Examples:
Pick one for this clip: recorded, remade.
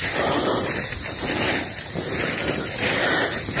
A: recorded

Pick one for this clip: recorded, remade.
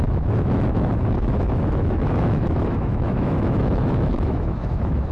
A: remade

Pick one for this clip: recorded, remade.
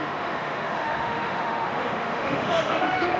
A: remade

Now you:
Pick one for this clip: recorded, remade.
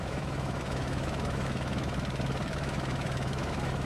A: remade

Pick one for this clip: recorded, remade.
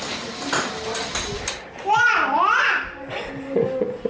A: recorded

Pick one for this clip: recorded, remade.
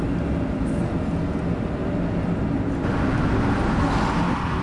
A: recorded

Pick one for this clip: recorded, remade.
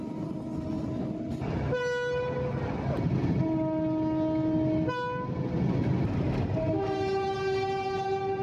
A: recorded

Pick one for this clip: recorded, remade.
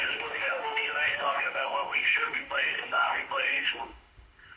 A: remade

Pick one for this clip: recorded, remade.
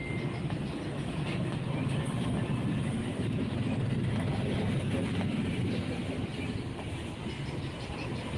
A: recorded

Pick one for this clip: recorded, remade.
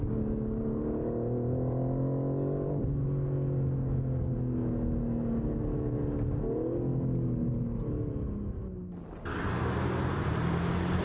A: recorded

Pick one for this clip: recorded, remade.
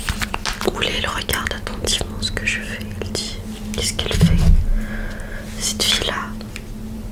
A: recorded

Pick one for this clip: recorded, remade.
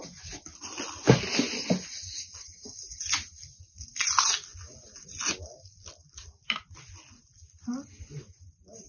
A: recorded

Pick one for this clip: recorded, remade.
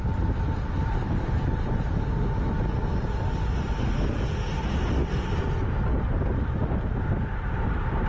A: recorded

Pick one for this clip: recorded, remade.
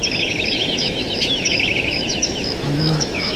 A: remade